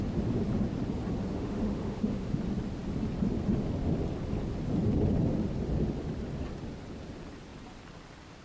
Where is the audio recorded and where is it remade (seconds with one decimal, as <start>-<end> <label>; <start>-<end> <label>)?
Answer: 0.0-1.3 recorded; 1.3-2.4 remade; 2.4-8.4 recorded